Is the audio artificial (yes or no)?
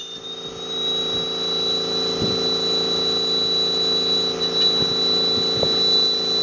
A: no